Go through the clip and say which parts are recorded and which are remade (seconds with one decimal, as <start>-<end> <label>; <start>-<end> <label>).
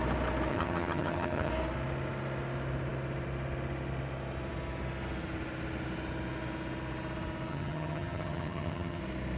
0.0-0.5 recorded; 0.5-1.5 remade; 1.5-7.5 recorded; 7.5-9.0 remade; 9.0-9.4 recorded